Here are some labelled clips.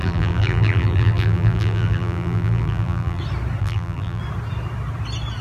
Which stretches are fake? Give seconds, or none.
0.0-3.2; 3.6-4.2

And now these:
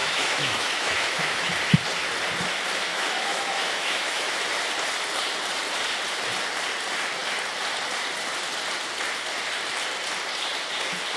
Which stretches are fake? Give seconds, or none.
0.0-1.5; 2.9-4.4

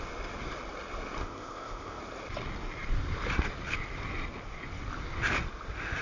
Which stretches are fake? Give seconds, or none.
1.2-2.0

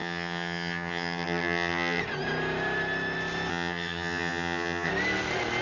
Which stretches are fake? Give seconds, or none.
0.0-2.0; 3.5-4.9